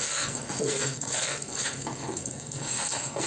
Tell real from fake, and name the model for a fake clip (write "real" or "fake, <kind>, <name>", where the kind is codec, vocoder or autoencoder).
fake, codec, SNAC